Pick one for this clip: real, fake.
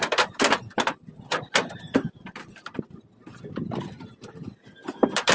fake